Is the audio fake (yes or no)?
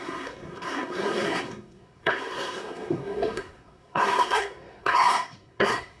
yes